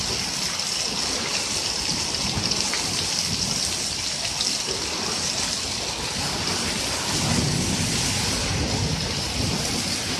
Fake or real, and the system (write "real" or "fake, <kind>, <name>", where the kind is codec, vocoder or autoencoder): real